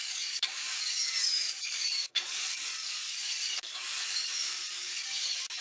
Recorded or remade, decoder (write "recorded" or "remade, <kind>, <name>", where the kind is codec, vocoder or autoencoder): remade, codec, DAC